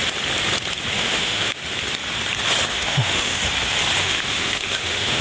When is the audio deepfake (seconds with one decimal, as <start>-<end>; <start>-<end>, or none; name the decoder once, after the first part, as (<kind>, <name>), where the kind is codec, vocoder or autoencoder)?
0.9-1.6 (autoencoder, DAC-VAE); 2.7-3.4; 4.0-5.2